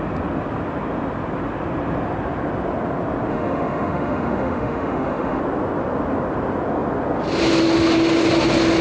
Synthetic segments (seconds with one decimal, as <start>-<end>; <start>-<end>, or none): 3.3-5.4